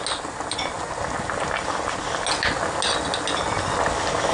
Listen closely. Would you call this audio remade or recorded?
recorded